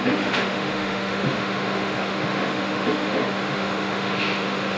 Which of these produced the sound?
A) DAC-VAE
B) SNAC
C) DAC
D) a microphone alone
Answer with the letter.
A